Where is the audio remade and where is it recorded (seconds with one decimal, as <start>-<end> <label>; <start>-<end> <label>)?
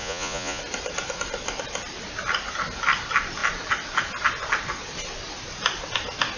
0.0-0.6 remade; 0.6-6.4 recorded